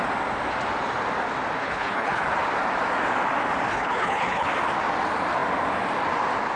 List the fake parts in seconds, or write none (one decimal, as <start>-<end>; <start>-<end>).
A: 1.6-2.2; 3.7-4.5